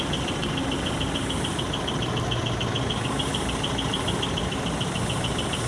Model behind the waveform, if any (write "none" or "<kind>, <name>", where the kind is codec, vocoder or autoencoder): none